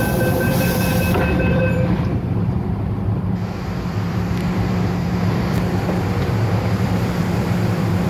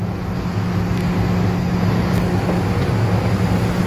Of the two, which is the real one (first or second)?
second